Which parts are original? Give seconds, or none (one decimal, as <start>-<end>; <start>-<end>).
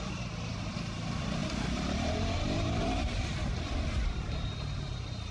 0.0-1.4; 3.1-5.3